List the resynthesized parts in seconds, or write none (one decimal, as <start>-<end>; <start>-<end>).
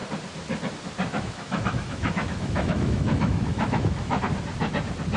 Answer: 1.1-4.2